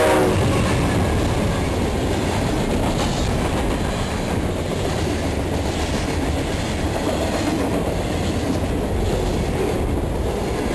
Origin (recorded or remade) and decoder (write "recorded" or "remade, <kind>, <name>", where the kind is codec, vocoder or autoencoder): recorded